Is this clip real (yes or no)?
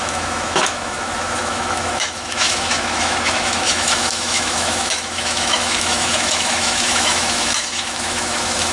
no